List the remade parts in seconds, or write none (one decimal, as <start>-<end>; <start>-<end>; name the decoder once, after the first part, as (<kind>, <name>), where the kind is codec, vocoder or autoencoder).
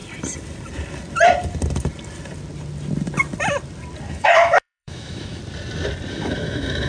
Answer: 4.1-5.4 (autoencoder, DAC-VAE); 6.1-6.9